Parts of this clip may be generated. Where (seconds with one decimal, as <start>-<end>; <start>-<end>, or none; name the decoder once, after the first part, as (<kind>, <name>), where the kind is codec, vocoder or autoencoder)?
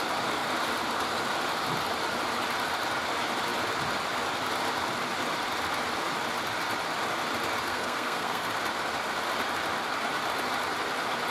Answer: 7.7-8.5 (codec, SNAC)